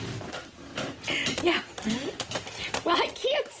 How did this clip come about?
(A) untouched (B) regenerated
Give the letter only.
B